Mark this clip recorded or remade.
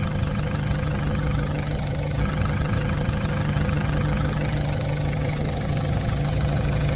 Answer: remade